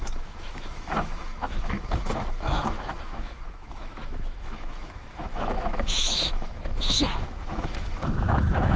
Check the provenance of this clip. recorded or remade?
remade